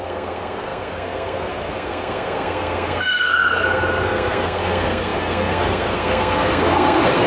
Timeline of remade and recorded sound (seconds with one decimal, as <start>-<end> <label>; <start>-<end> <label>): 0.0-7.3 remade